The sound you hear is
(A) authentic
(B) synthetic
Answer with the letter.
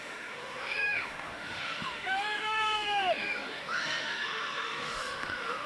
B